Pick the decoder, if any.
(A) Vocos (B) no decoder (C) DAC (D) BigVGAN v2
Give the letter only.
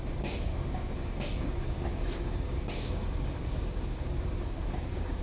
C